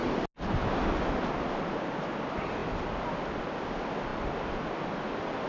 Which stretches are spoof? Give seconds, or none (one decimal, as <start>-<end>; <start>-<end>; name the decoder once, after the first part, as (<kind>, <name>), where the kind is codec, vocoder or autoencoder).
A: 4.1-4.6 (vocoder, BigVGAN v2)